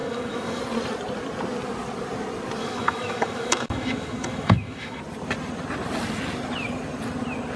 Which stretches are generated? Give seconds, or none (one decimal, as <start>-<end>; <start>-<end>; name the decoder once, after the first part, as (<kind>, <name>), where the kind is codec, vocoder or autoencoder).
0.0-0.6 (autoencoder, DAC-VAE); 2.6-5.0